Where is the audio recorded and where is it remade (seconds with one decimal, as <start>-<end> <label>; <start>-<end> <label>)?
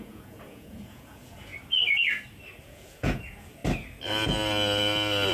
0.0-1.5 remade; 1.5-2.6 recorded; 2.6-3.6 remade; 3.6-5.3 recorded